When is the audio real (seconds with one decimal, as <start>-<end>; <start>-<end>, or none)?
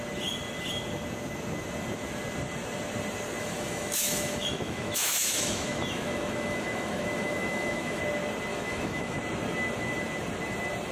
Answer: 0.0-3.4; 8.0-8.5; 9.2-10.9